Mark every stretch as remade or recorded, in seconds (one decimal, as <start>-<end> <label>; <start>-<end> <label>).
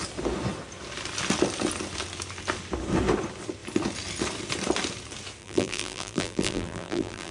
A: 0.0-5.4 recorded; 5.4-7.3 remade